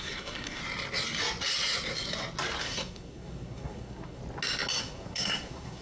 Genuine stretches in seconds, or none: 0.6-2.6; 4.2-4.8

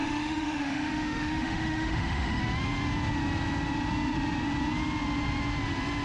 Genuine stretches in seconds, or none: 2.4-6.0

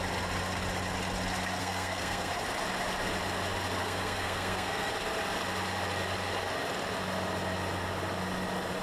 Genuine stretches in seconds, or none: 0.0-1.6; 2.3-3.8; 4.9-8.8

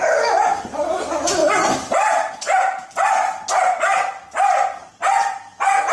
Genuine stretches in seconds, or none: 0.0-5.9

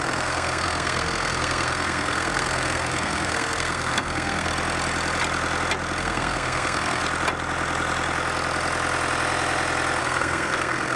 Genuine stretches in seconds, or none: 4.5-6.0; 7.0-10.0

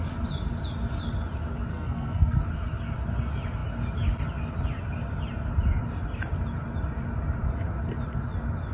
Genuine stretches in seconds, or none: 0.0-1.7; 2.4-8.7

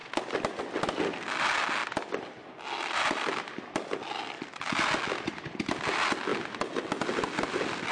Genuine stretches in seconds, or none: 0.0-7.9